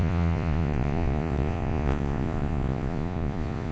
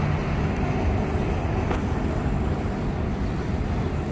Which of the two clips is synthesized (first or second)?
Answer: first